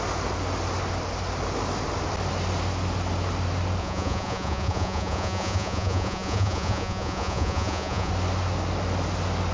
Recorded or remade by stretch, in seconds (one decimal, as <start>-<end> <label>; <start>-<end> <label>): 0.0-3.8 recorded; 3.8-8.1 remade; 8.1-9.5 recorded